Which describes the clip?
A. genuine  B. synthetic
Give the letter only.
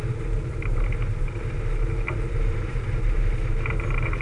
B